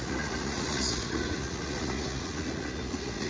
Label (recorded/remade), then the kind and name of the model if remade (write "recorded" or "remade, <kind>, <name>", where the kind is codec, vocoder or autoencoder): remade, vocoder, Vocos